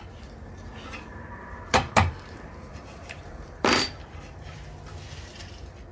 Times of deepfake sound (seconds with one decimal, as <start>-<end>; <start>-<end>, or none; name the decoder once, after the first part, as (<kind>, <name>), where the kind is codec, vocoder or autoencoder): 1.1-4.6 (vocoder, BigVGAN v2)